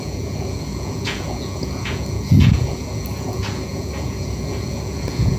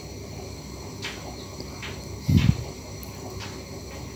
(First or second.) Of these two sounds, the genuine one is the second